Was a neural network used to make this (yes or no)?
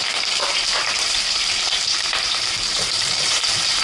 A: yes